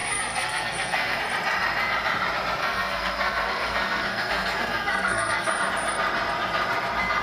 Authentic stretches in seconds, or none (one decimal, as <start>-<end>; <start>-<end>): 1.2-2.6; 5.5-7.2